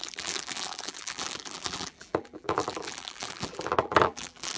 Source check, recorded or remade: remade